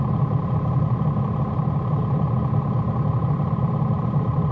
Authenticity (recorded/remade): recorded